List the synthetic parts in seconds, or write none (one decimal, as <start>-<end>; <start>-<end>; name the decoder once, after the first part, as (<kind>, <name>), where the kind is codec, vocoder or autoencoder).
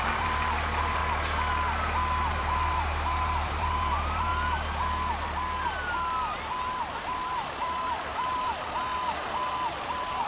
0.0-1.0 (vocoder, BigVGAN v2); 2.3-4.3; 7.6-8.9; 9.7-10.3